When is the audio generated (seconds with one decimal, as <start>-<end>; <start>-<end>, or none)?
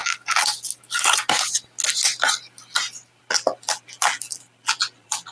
3.2-5.3